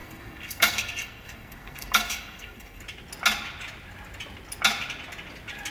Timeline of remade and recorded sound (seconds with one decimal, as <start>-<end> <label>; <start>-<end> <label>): 0.0-2.8 remade; 2.8-5.7 recorded